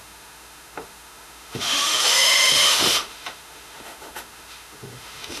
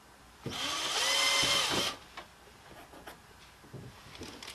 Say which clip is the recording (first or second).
second